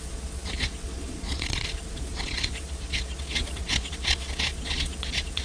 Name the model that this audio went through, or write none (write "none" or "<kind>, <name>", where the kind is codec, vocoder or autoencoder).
vocoder, Vocos